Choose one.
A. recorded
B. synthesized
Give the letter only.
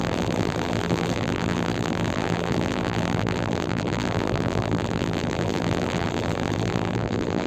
B